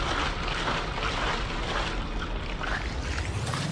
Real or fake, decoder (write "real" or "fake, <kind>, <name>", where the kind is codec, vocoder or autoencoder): real